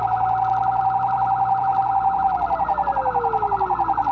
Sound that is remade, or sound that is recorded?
recorded